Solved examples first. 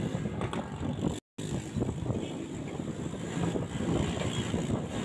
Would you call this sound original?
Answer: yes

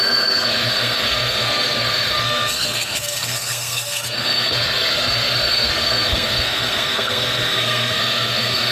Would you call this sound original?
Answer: no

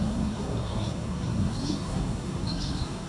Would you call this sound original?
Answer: no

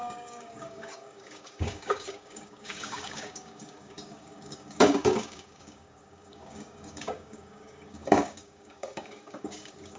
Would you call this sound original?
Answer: no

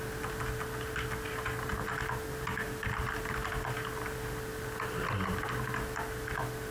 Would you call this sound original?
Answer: yes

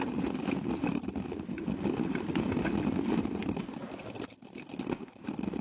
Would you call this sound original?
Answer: yes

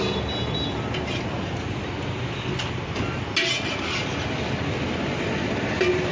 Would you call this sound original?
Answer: yes